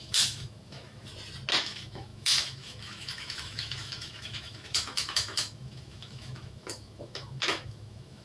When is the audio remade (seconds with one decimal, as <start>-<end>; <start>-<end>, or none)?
0.0-1.1; 1.6-8.2